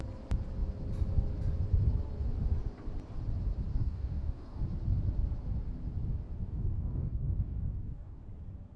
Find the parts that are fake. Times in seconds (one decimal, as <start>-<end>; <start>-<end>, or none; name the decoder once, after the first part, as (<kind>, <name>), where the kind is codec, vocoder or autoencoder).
3.7-4.6 (codec, DAC); 6.4-8.2